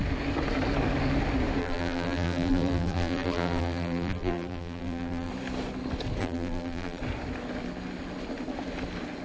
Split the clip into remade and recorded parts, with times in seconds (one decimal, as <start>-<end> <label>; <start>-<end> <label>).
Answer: 0.0-1.6 recorded; 1.6-5.3 remade; 5.3-6.2 recorded; 6.2-7.0 remade; 7.0-9.2 recorded